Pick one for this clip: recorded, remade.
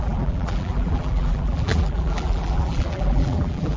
remade